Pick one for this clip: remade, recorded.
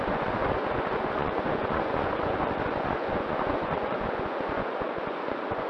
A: remade